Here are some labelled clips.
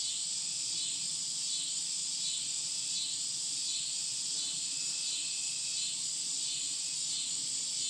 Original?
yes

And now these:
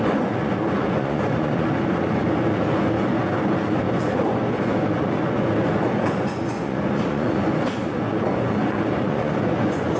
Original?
no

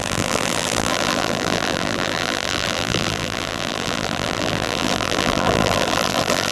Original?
no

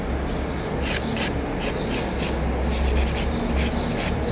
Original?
yes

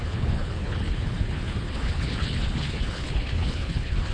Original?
no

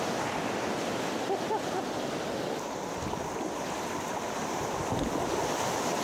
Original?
yes